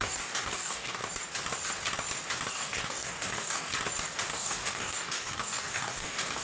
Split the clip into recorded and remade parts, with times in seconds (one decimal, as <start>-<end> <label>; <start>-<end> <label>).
0.0-1.0 remade; 1.0-2.5 recorded; 2.5-3.7 remade; 3.7-4.3 recorded; 4.3-6.4 remade